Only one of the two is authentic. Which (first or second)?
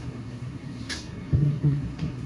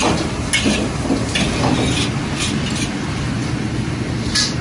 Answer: second